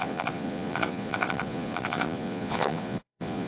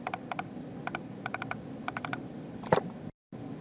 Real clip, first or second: second